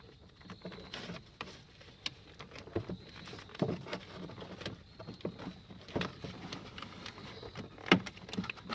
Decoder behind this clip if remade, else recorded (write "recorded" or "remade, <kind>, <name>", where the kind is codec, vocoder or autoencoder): recorded